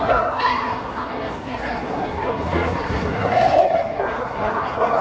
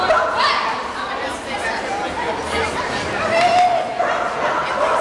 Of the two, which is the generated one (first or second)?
first